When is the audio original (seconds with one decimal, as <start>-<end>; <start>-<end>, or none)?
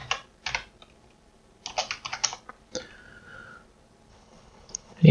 0.0-4.1